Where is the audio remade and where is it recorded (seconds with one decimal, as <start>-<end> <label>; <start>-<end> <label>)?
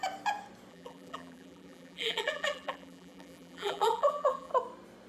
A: 0.0-0.7 recorded; 0.7-4.5 remade; 4.5-5.1 recorded